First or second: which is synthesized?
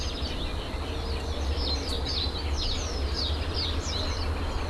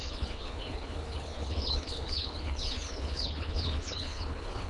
second